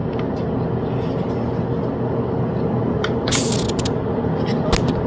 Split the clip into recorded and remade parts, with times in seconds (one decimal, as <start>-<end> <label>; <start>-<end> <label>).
0.0-5.1 recorded

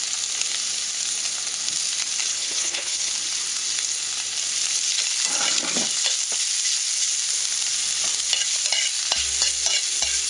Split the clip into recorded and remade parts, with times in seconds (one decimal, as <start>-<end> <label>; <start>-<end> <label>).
0.0-2.3 recorded; 2.3-3.1 remade; 3.1-10.3 recorded